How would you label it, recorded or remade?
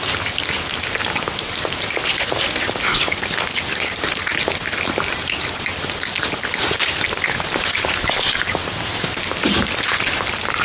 recorded